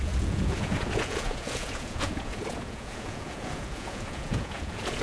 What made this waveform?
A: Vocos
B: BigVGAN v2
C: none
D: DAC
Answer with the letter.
A